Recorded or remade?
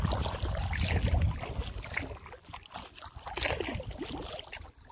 recorded